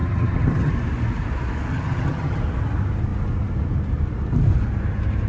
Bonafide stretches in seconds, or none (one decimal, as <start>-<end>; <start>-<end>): 0.7-1.7; 2.4-5.3